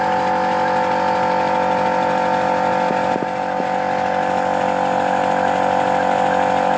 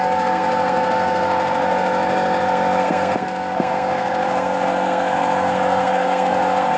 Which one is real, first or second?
first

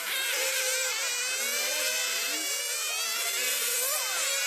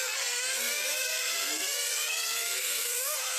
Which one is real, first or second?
first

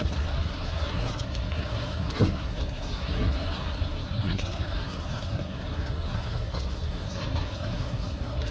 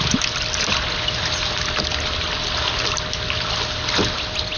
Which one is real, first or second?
second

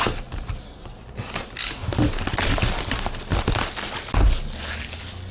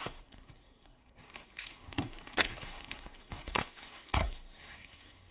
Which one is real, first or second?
first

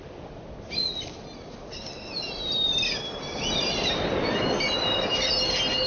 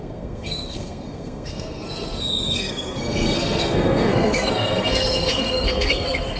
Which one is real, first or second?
first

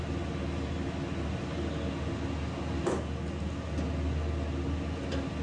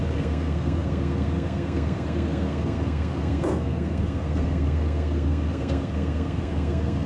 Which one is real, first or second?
first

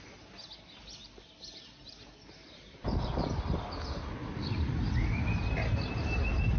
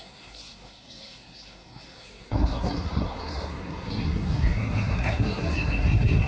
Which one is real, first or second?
first